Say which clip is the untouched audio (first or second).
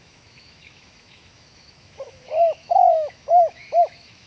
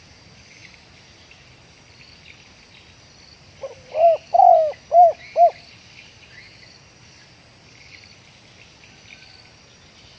second